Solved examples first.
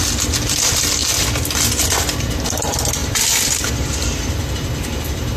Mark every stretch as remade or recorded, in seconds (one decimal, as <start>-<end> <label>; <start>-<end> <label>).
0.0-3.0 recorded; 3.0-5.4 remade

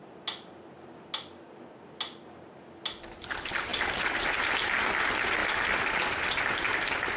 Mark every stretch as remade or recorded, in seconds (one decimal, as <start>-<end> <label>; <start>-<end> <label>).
0.0-5.4 recorded; 5.4-6.3 remade; 6.3-7.2 recorded

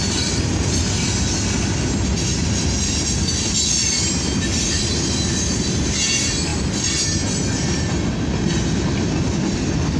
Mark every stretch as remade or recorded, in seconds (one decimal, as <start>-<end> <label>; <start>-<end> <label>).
0.0-10.0 recorded